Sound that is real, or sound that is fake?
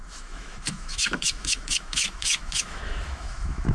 fake